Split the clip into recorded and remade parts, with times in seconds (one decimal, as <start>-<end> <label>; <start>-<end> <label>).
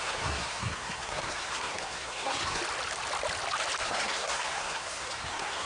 0.0-2.6 remade; 2.6-3.8 recorded; 3.8-5.7 remade